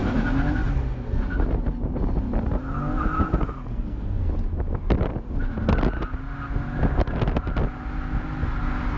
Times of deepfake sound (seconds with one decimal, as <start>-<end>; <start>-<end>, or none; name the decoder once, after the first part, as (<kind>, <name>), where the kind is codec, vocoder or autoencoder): 3.7-4.3 (codec, SNAC)